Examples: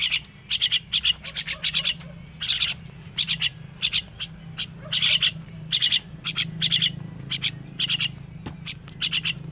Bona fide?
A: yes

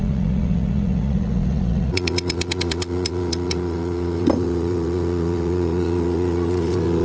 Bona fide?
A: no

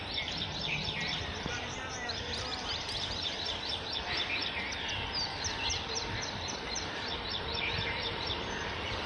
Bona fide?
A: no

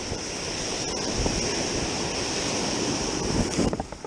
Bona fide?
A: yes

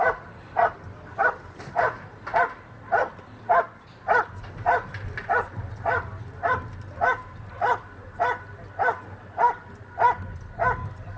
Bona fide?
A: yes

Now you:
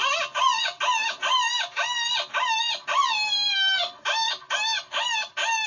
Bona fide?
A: yes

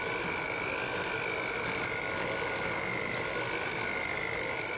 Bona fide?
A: yes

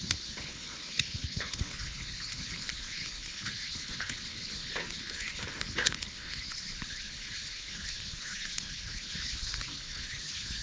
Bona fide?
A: no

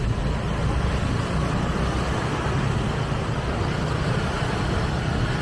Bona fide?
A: yes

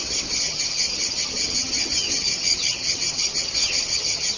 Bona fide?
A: no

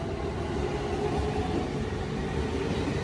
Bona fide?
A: yes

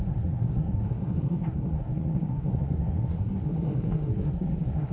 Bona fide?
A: no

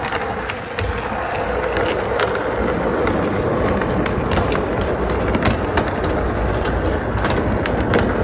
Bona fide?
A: yes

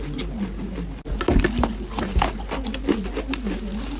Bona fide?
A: yes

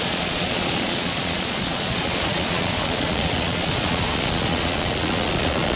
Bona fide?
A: no